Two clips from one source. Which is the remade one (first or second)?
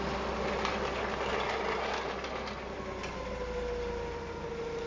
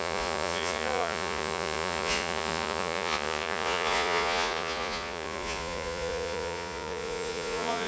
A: second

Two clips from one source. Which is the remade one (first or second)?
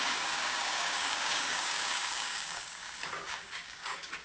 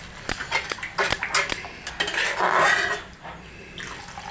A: first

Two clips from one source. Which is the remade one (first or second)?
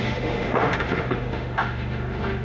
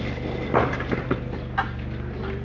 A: first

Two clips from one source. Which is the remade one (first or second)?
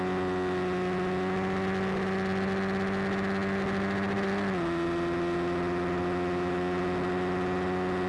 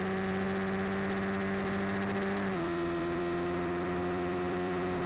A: second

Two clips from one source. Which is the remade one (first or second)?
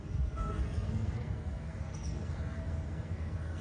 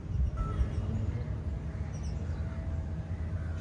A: first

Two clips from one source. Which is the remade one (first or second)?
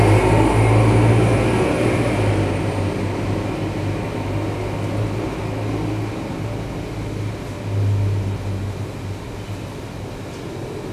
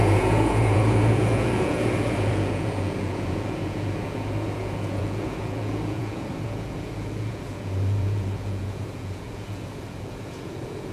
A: second